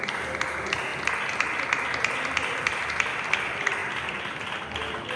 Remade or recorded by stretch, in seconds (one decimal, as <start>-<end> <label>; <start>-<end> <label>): 0.0-5.2 recorded